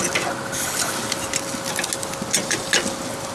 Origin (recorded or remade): recorded